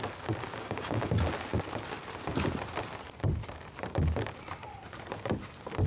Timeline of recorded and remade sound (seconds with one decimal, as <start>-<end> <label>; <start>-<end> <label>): 0.0-0.5 recorded; 0.5-1.1 remade; 1.1-5.9 recorded